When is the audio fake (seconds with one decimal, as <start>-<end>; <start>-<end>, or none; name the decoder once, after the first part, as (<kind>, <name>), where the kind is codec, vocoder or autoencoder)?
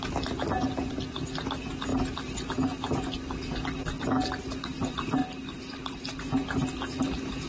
none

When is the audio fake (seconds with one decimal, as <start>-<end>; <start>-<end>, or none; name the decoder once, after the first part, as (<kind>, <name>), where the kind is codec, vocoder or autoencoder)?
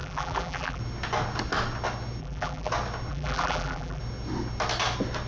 0.0-0.8 (vocoder, BigVGAN v2); 2.2-2.7; 3.1-4.0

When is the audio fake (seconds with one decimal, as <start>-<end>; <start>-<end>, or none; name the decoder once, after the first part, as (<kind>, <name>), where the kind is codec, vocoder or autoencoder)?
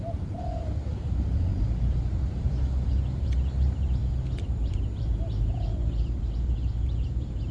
0.0-4.0 (vocoder, BigVGAN v2); 4.7-7.5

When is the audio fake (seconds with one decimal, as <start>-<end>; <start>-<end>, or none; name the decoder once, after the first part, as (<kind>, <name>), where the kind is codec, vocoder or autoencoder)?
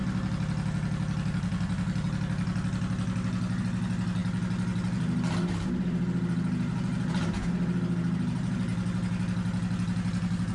none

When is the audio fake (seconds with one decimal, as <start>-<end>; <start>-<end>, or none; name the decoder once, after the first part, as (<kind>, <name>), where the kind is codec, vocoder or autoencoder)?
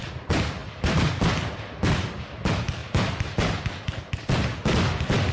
0.6-1.1 (vocoder, BigVGAN v2); 2.8-3.5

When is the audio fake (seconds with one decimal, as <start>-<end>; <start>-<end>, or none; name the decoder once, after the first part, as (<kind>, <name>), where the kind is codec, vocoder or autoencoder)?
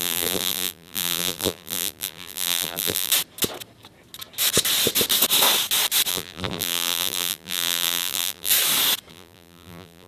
0.0-3.1 (vocoder, BigVGAN v2); 6.1-8.5; 9.1-10.1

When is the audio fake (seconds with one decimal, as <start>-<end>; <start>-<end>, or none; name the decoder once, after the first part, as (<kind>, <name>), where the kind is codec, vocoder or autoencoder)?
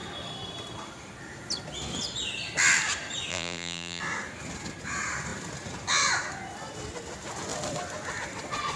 3.3-4.0 (vocoder, BigVGAN v2)